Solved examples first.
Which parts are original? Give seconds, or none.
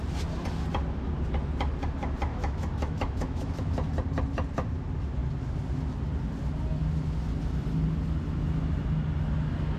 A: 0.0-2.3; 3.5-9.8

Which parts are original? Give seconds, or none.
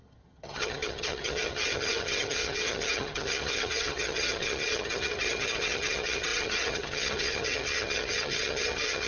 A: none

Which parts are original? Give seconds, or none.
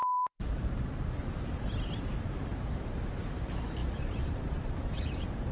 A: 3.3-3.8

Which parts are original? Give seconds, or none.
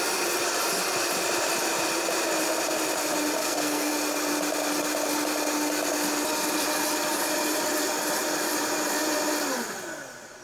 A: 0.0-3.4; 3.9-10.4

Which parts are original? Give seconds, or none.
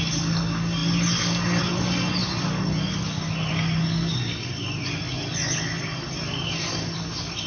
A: 0.0-7.5